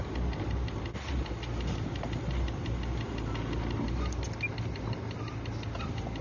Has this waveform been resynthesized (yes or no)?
no